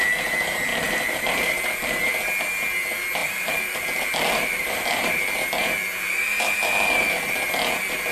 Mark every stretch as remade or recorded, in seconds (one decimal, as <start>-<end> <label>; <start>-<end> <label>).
0.0-0.7 recorded; 0.7-1.9 remade; 1.9-3.2 recorded; 3.2-5.2 remade; 5.2-8.1 recorded